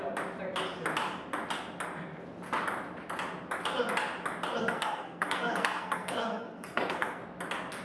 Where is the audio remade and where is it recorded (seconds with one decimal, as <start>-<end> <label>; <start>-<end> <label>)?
0.0-4.6 recorded; 4.6-7.2 remade; 7.2-7.8 recorded